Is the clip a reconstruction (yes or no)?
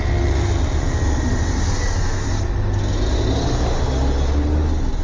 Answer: no